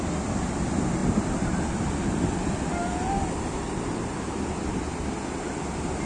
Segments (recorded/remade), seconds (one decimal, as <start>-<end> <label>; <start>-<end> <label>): 0.0-6.1 recorded